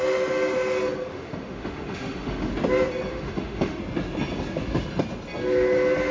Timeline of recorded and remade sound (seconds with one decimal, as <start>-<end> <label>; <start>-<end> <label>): 0.0-1.1 recorded; 1.1-2.5 remade; 2.5-3.1 recorded; 3.1-3.8 remade; 3.8-6.1 recorded